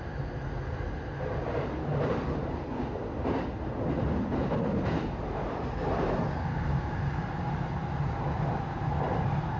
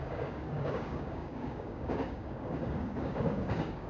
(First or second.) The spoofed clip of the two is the second